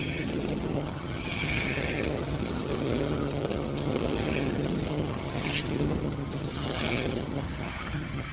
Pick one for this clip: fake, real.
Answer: fake